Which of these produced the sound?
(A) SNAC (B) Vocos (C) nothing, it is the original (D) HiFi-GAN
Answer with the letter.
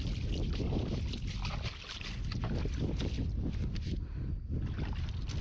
C